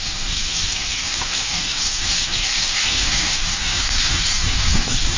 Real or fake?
fake